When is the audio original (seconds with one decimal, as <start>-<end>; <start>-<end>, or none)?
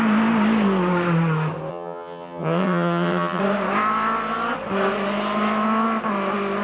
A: 0.0-1.7; 3.4-6.6